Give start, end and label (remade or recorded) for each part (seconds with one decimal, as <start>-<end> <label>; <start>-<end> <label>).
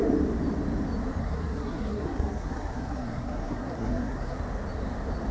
0.0-1.2 recorded; 1.2-4.4 remade; 4.4-5.3 recorded